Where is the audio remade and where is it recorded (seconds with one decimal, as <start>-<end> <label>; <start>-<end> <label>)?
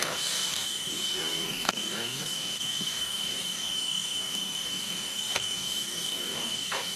0.0-7.0 remade